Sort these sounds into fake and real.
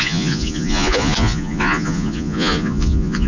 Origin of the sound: fake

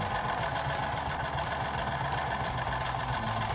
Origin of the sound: real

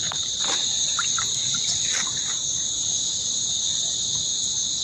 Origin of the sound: real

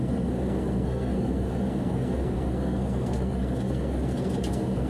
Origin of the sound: fake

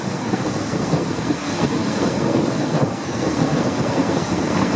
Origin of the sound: fake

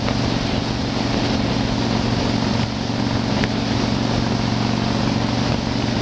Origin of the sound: real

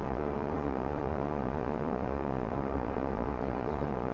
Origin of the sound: fake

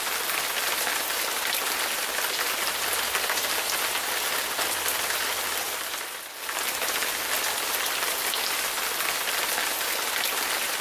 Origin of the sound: real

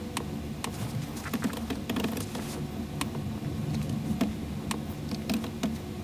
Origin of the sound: real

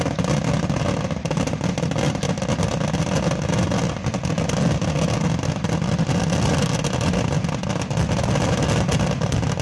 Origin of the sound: real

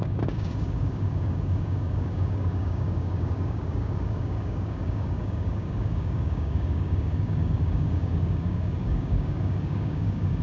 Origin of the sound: fake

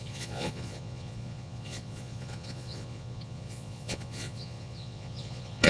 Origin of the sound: fake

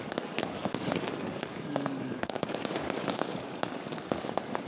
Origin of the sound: fake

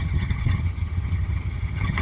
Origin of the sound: fake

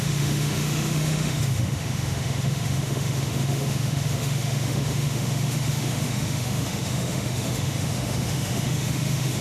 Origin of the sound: fake